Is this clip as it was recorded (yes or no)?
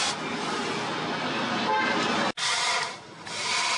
yes